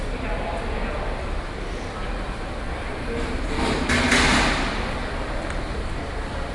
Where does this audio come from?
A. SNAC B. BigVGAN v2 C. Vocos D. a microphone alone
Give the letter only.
D